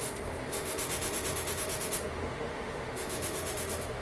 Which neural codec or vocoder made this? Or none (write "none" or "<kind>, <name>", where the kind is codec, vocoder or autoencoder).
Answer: autoencoder, DAC-VAE